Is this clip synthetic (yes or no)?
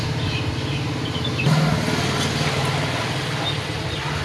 no